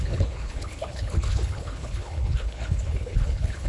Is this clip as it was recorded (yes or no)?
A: no